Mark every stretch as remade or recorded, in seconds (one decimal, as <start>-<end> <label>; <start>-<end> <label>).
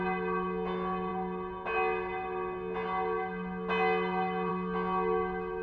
0.0-5.6 recorded